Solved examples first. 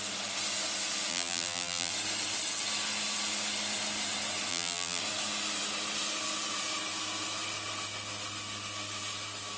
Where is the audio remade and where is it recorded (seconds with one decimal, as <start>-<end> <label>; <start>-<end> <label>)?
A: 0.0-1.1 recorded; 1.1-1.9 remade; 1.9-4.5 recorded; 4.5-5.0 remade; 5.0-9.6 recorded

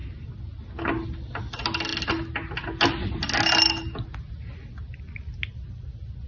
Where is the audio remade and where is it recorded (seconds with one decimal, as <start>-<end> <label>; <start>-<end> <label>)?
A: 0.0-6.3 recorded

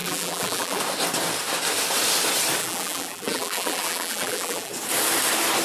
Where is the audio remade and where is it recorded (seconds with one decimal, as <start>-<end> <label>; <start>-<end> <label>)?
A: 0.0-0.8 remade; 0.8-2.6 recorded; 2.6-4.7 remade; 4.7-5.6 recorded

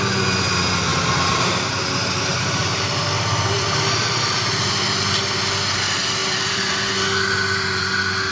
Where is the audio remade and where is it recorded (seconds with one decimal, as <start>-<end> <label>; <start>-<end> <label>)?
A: 0.0-0.9 recorded; 0.9-4.7 remade; 4.7-6.2 recorded; 6.2-6.9 remade; 6.9-8.3 recorded

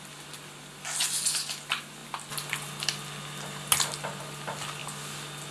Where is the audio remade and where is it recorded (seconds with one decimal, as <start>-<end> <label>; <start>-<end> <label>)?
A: 0.0-5.5 recorded

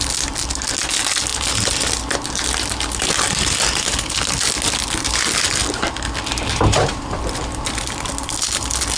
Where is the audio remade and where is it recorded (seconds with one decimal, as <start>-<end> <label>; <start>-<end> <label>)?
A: 0.0-9.0 recorded